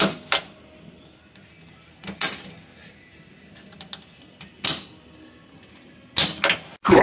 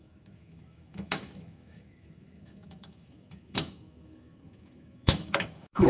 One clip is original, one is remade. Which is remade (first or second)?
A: second